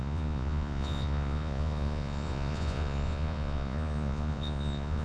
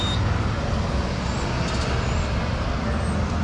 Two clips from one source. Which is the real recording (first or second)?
second